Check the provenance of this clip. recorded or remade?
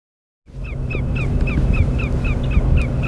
recorded